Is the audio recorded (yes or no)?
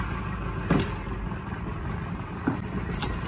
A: yes